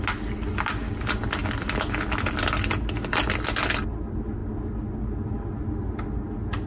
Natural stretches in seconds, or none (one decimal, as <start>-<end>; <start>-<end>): 0.0-6.7